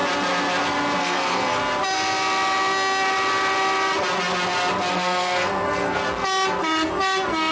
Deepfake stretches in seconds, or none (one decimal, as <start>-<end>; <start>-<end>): 1.0-1.6; 4.9-6.0; 6.6-7.5